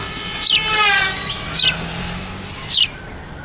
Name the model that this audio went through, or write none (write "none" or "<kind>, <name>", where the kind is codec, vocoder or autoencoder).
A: none